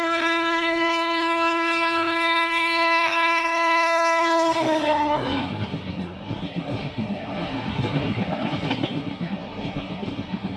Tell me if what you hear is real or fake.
fake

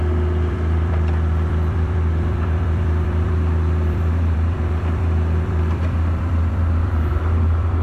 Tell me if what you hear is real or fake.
fake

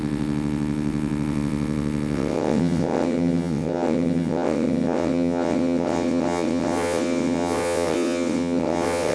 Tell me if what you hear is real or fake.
fake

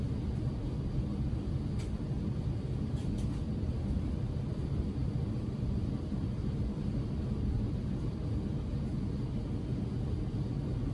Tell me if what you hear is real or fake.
fake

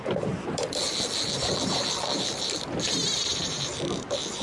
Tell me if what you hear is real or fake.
fake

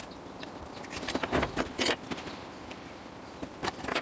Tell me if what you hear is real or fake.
real